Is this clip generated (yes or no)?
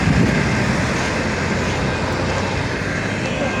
no